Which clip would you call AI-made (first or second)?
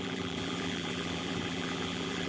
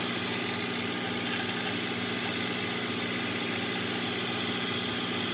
first